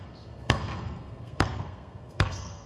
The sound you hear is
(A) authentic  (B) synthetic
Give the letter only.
B